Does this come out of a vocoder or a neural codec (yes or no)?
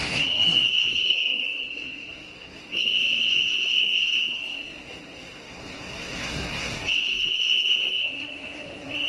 yes